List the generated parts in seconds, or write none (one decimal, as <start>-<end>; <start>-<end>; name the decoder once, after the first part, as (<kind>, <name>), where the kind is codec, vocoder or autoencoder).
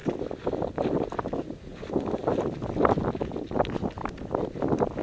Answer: 1.7-3.3 (vocoder, BigVGAN v2)